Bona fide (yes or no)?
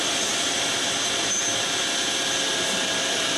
yes